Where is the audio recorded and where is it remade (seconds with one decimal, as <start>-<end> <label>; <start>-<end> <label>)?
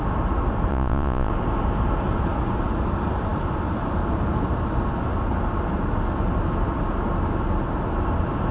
0.0-0.7 recorded; 0.7-1.3 remade; 1.3-8.5 recorded